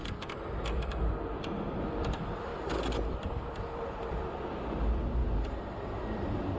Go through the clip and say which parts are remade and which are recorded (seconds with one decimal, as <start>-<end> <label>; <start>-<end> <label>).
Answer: 0.0-1.0 remade; 1.0-5.2 recorded; 5.2-6.6 remade